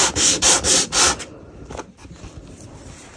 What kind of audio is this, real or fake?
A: real